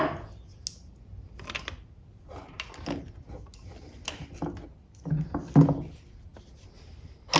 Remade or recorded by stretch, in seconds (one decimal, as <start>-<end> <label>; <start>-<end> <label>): 0.0-7.4 recorded